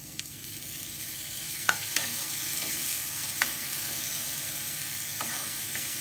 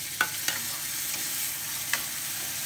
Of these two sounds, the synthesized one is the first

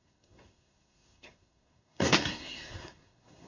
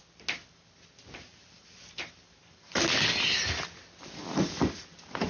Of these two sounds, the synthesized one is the first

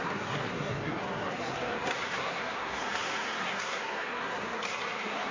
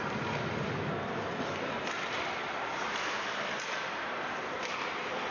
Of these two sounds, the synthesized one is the first